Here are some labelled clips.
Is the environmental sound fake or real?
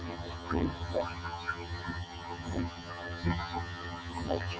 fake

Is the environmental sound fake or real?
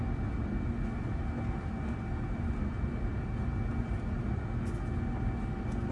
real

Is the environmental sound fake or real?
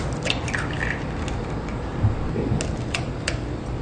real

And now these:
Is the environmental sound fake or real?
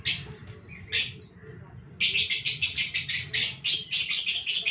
real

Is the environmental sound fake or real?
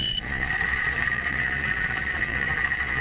fake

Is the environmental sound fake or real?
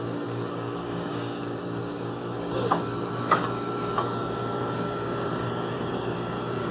fake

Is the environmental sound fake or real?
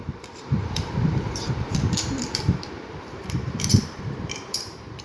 fake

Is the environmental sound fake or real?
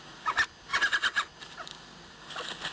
real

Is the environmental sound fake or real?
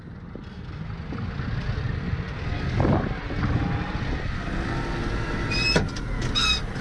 real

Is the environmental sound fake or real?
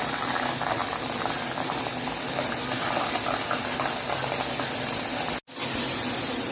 real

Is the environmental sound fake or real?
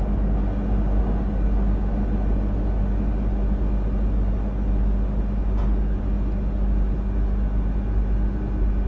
real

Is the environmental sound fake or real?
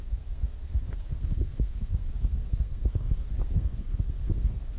fake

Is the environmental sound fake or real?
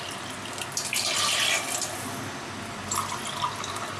real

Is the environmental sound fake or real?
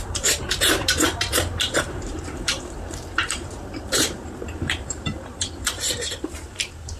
fake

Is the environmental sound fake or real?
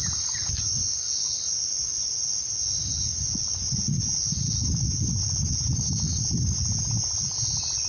real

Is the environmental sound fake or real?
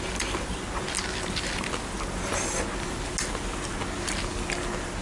real